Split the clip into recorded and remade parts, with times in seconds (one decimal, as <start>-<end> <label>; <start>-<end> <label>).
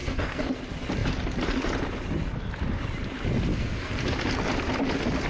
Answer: 0.0-0.6 remade; 0.6-3.5 recorded; 3.5-4.0 remade; 4.0-5.3 recorded